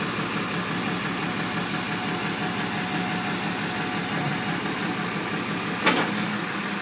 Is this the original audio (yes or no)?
yes